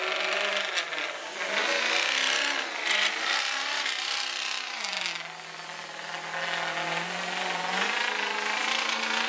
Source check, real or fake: real